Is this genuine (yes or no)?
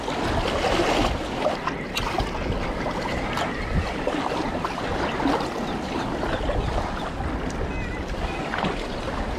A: yes